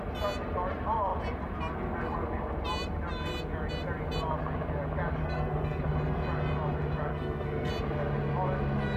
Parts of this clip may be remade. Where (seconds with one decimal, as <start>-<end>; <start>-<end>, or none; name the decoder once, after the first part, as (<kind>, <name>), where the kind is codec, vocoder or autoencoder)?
5.2-5.8 (codec, SNAC); 7.1-7.7